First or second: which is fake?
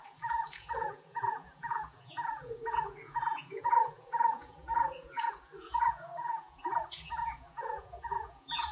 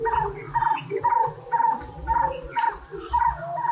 first